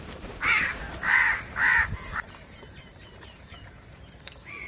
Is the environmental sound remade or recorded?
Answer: remade